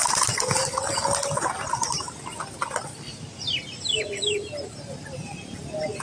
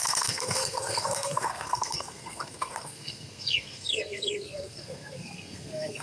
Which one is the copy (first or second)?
second